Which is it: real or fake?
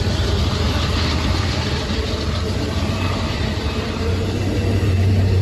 fake